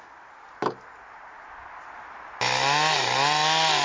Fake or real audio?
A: real